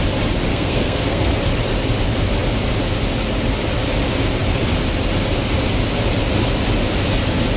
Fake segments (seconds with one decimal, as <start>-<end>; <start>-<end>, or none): 0.5-1.3